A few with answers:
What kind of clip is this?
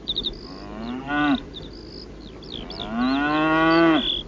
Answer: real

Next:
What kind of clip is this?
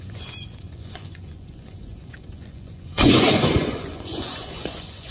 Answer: fake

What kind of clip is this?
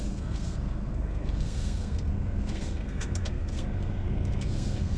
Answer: fake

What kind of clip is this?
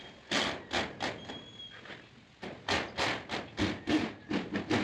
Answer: real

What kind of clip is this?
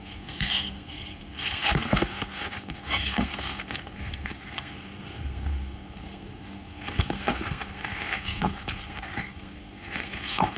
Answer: fake